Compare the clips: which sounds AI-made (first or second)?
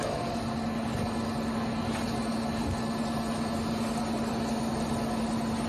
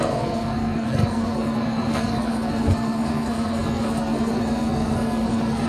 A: second